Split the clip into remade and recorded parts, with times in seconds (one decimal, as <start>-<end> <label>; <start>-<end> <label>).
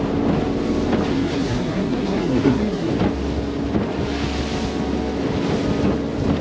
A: 0.0-1.1 recorded; 1.1-2.9 remade; 2.9-6.4 recorded